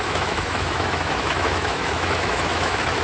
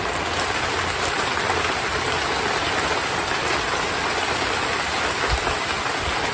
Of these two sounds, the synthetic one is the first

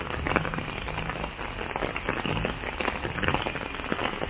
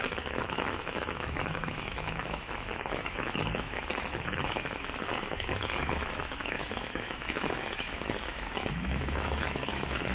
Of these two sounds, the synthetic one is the second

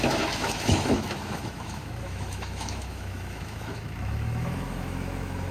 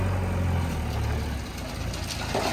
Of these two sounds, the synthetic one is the first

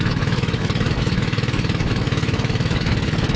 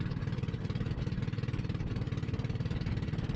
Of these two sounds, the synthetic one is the first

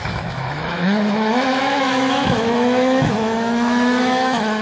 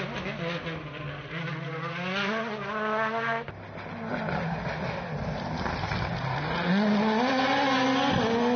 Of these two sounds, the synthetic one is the first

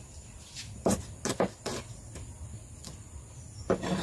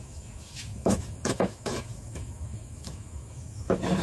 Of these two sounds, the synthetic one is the second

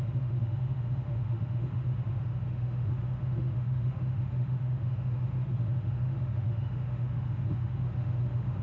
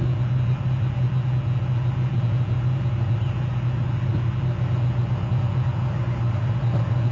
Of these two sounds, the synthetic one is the first